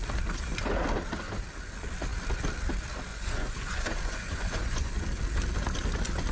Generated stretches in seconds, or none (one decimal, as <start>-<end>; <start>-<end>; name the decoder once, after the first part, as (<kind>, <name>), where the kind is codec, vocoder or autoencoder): 3.1-4.9 (vocoder, Vocos)